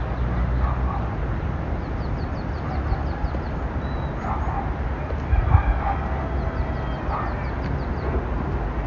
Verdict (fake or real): real